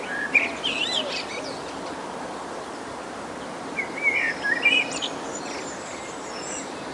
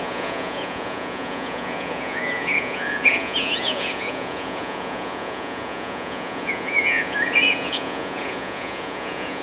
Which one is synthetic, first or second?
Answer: second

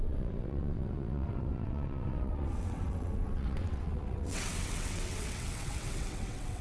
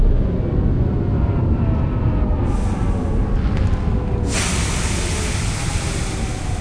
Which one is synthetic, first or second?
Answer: first